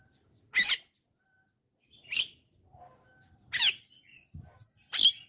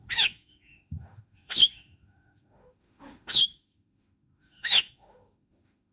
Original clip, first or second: first